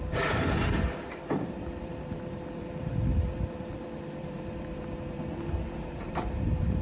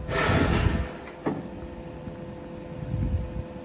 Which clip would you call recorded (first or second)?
second